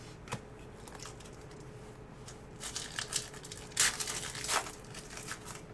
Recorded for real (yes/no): yes